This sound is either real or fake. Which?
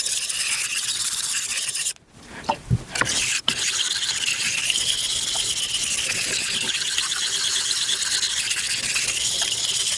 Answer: fake